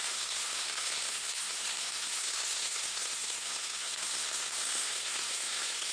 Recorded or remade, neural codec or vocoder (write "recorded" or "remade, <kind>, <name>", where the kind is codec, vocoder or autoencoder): remade, codec, SNAC